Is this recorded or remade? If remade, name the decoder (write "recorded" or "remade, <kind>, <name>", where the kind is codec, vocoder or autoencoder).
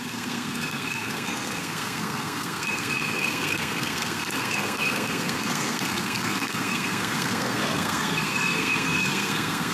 remade, codec, SNAC